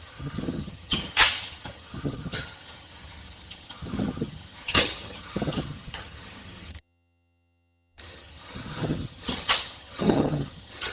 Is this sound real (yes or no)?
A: no